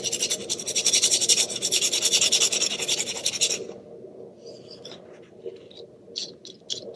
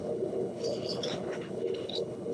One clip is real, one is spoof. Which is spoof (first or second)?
second